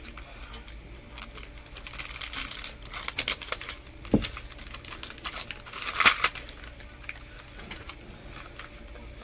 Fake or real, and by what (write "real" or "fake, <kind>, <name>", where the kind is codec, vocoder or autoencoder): real